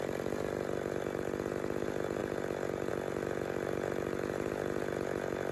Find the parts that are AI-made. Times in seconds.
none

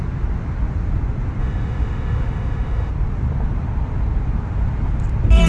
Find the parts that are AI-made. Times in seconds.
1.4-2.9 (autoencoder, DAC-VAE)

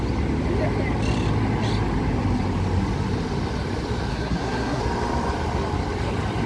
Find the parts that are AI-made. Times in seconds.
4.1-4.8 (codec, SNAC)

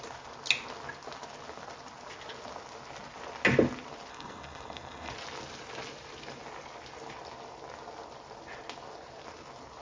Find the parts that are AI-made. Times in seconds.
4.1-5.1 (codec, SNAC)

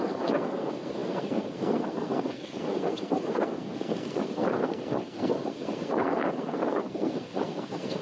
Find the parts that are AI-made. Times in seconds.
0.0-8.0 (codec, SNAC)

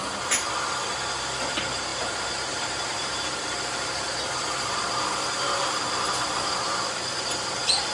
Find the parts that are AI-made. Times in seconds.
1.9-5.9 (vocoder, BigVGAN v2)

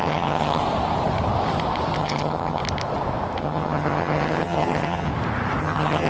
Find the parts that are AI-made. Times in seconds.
0.0-0.6 (vocoder, HiFi-GAN); 2.0-2.6; 3.4-5.1; 5.6-6.1